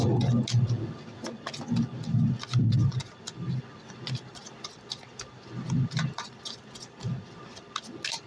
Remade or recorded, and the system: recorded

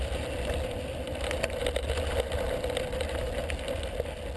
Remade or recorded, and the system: recorded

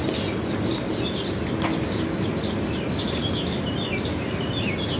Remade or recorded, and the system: recorded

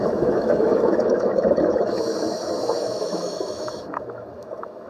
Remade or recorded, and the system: remade, autoencoder, DAC-VAE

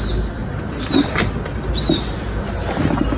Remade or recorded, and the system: recorded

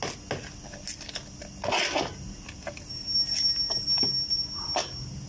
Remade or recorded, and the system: recorded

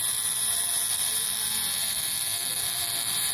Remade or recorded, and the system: remade, vocoder, BigVGAN v2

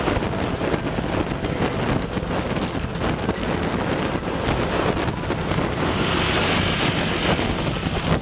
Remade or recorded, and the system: recorded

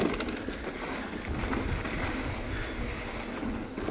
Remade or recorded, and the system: recorded